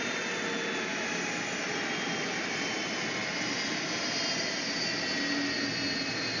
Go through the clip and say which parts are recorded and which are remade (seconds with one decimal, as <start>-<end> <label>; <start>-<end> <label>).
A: 0.0-6.4 recorded

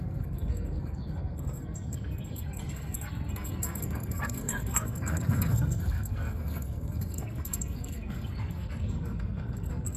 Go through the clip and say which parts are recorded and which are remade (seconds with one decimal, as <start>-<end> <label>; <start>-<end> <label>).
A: 0.0-10.0 remade

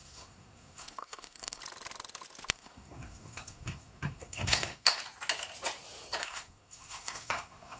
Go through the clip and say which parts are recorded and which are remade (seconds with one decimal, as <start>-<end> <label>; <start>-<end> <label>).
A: 0.0-1.6 remade; 1.6-2.5 recorded; 2.5-5.0 remade; 5.0-6.2 recorded; 6.2-7.8 remade